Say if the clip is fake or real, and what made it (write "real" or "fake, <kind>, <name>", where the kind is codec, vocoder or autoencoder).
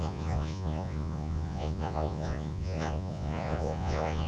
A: fake, vocoder, Vocos